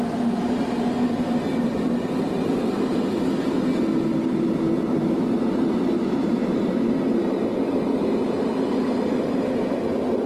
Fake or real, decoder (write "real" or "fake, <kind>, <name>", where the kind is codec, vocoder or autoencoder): real